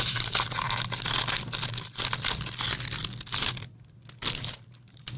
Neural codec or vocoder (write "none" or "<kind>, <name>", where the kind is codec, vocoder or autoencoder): none